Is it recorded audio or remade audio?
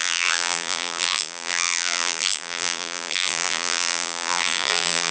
remade